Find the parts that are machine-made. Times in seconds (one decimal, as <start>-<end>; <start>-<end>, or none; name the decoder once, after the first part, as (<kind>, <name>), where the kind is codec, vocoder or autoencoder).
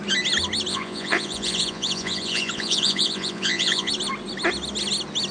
0.7-3.9 (vocoder, Vocos)